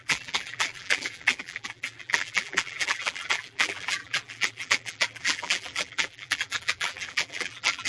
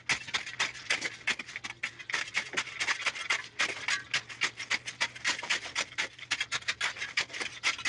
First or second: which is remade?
first